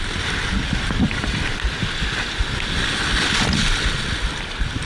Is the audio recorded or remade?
recorded